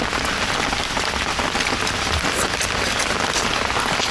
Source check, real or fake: real